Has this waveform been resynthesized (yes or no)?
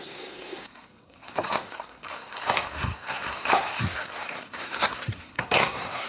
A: yes